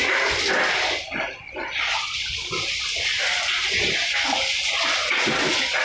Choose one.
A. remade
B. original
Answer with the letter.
B